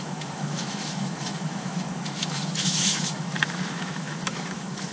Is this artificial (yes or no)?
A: yes